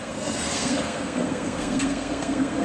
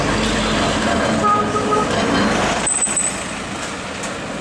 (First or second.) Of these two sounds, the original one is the second